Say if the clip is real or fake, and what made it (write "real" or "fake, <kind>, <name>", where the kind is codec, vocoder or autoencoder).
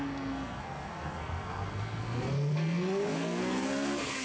fake, codec, SNAC